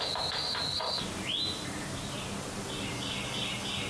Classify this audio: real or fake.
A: real